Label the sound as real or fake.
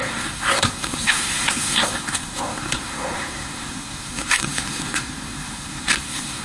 fake